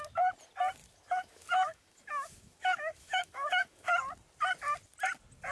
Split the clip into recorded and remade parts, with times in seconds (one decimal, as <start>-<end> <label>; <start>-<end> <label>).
0.0-0.8 recorded; 0.8-3.9 remade; 3.9-5.5 recorded